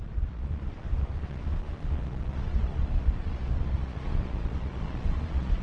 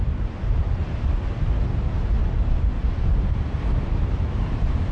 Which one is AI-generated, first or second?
first